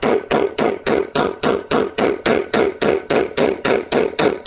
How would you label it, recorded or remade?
remade